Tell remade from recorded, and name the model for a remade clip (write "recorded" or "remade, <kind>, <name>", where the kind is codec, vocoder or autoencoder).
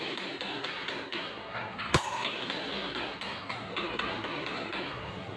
remade, codec, SNAC